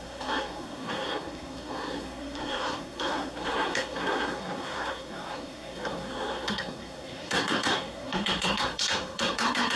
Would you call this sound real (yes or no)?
no